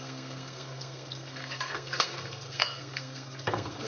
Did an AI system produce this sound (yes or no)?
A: yes